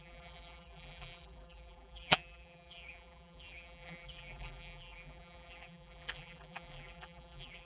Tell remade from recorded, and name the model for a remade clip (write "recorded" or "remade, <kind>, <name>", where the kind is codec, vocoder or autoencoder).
remade, vocoder, BigVGAN v2